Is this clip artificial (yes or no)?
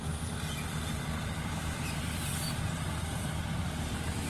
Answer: yes